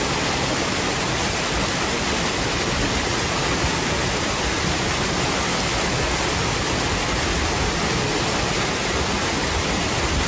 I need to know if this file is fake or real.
real